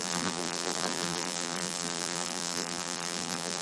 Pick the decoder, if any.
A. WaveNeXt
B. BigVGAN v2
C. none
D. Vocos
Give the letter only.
B